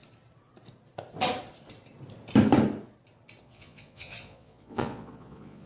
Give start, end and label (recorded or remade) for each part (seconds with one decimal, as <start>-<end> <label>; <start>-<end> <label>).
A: 0.0-3.4 recorded; 3.4-5.7 remade

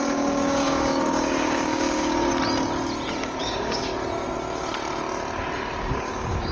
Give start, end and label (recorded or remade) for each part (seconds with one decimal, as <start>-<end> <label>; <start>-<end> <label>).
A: 0.0-2.3 remade; 2.3-3.4 recorded; 3.4-3.9 remade; 3.9-5.8 recorded; 5.8-6.5 remade

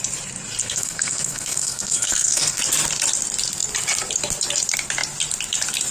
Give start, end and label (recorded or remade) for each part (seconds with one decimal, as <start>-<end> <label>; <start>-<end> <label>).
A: 0.0-0.6 recorded; 0.6-2.6 remade; 2.6-5.9 recorded

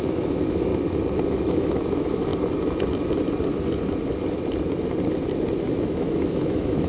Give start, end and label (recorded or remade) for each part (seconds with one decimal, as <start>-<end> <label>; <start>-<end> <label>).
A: 0.0-0.7 remade; 0.7-1.3 recorded; 1.3-2.3 remade; 2.3-5.7 recorded; 5.7-6.9 remade

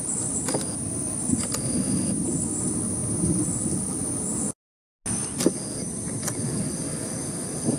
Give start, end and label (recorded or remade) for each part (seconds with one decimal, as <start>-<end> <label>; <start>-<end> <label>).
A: 0.0-7.8 recorded

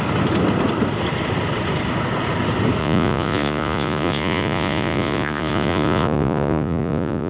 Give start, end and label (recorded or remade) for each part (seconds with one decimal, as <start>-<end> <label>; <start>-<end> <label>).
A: 0.0-2.8 recorded; 2.8-7.3 remade